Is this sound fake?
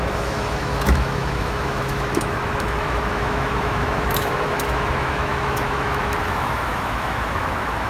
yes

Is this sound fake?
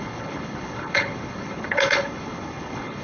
yes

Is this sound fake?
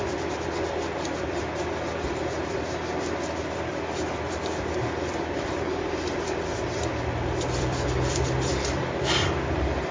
yes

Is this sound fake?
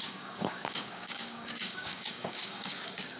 yes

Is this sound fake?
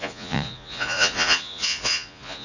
yes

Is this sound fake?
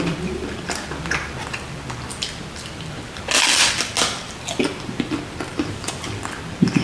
no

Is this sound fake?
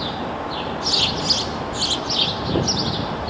no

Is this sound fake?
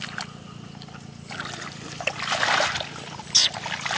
no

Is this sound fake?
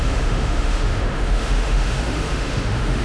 yes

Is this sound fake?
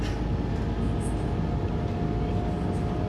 no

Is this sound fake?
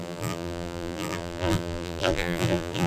yes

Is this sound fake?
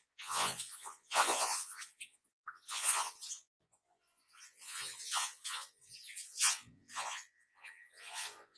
yes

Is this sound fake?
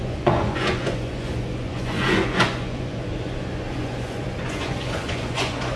yes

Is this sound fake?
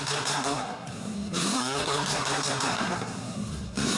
yes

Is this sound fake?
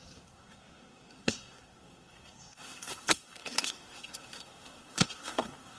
yes